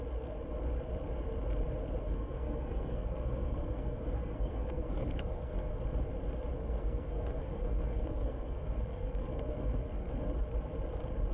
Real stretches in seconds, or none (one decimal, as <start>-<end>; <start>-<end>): 0.0-2.0; 5.7-6.5; 10.1-11.3